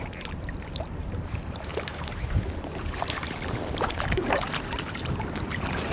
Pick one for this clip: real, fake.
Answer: fake